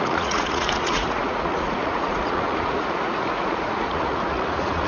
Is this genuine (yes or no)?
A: no